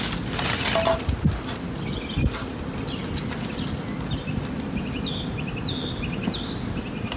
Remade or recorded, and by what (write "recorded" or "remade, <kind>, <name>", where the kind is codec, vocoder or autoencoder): recorded